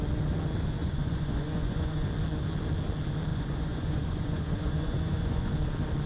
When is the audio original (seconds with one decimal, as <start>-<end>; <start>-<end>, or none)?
0.0-0.8; 2.1-3.3; 5.5-6.1